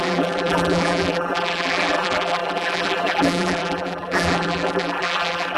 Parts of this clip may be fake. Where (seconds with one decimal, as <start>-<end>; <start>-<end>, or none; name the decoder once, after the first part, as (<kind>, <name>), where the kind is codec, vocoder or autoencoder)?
0.0-5.6 (vocoder, BigVGAN v2)